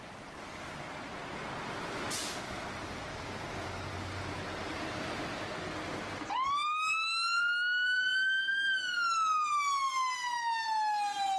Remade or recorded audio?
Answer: recorded